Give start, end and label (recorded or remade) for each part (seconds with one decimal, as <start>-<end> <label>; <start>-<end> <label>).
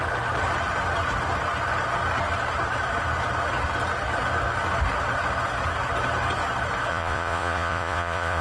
0.0-6.9 recorded; 6.9-8.4 remade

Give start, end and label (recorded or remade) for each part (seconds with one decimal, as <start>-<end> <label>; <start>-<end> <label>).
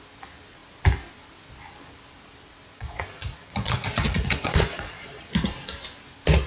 0.0-2.7 recorded; 2.7-5.3 remade; 5.3-6.5 recorded